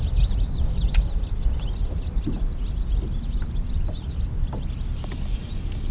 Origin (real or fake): real